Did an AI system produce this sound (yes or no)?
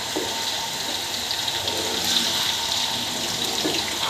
no